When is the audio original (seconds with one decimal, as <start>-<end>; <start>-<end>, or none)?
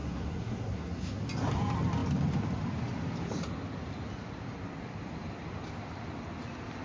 1.2-6.8